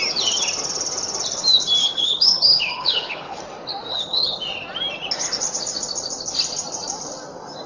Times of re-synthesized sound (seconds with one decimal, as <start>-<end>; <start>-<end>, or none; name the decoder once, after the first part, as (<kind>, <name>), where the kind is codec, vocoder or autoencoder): 1.8-3.4 (codec, HILCodec); 3.9-4.4